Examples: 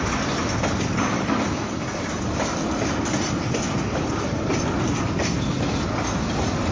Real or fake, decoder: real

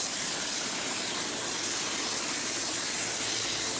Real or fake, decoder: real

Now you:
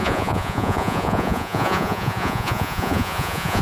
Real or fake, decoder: fake, vocoder, Vocos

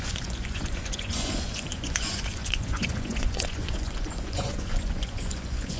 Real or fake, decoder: fake, vocoder, Vocos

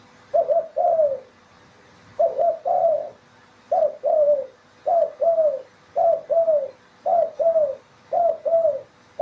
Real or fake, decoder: real